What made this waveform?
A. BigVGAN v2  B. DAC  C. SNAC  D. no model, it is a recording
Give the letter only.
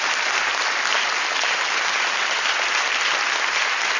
D